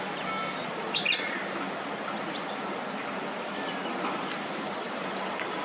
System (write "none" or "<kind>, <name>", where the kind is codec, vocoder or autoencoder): none